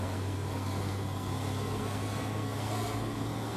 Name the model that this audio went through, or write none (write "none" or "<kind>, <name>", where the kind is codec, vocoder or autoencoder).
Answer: codec, SNAC